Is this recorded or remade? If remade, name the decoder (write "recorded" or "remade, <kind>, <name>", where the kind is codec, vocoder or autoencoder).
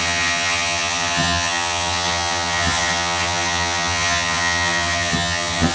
remade, vocoder, HiFi-GAN